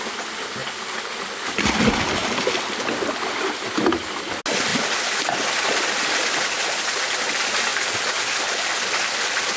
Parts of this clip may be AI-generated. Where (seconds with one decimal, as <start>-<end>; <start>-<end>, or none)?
4.7-6.4